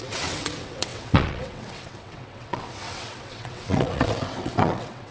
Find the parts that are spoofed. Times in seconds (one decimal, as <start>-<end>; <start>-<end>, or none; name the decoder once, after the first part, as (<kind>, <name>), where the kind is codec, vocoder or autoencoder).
0.0-5.1 (vocoder, WaveNeXt)